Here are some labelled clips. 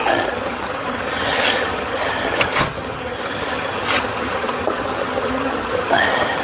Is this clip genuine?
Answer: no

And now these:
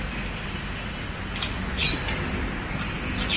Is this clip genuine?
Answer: yes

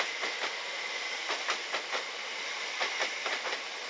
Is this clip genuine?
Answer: yes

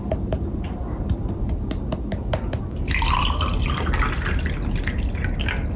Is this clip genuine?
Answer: yes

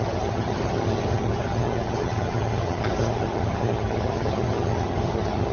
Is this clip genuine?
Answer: no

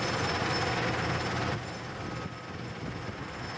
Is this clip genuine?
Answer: yes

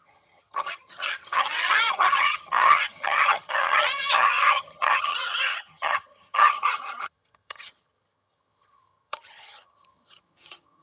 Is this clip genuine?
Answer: no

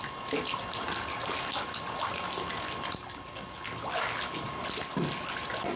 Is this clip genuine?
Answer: yes